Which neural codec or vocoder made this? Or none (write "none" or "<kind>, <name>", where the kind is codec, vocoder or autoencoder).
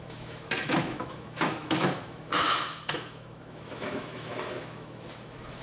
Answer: autoencoder, DAC-VAE